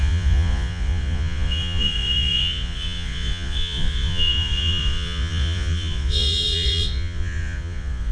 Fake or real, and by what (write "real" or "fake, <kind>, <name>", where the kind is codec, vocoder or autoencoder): fake, vocoder, Vocos